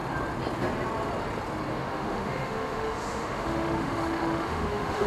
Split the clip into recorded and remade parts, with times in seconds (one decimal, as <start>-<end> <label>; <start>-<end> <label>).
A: 0.0-1.7 recorded; 1.7-5.1 remade